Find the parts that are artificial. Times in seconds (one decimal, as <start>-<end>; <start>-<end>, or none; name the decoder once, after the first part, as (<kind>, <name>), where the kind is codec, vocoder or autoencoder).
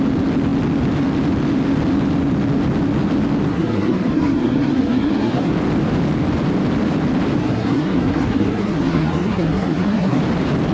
3.5-5.5 (codec, SNAC); 7.4-10.2